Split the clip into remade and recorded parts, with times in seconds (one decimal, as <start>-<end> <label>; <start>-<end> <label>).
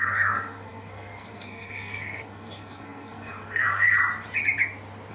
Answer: 0.0-4.0 remade; 4.0-5.1 recorded